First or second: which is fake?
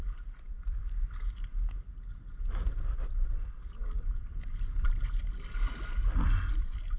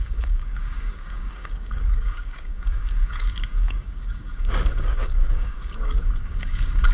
second